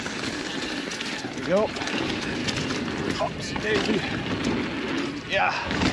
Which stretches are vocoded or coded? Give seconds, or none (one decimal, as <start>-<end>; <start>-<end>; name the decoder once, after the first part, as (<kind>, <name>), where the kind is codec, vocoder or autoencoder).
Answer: 0.0-0.5 (codec, DAC); 1.9-2.4; 5.4-5.9